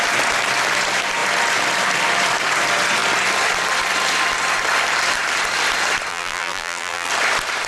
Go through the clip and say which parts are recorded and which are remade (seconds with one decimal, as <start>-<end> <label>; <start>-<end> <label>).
0.0-6.1 recorded; 6.1-7.1 remade; 7.1-7.7 recorded